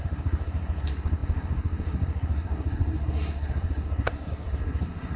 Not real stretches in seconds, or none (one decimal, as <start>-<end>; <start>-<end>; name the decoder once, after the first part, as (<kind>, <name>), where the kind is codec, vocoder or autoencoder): 0.0-5.2 (codec, SNAC)